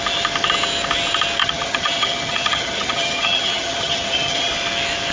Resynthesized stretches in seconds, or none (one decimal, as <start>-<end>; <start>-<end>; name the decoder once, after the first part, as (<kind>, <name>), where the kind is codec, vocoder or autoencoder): 1.4-4.5 (vocoder, HiFi-GAN)